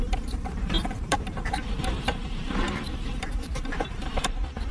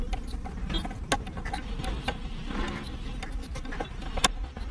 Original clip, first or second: second